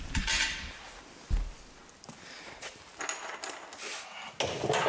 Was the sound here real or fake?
real